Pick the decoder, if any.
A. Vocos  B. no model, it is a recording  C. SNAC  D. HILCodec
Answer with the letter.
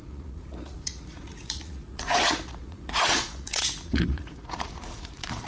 A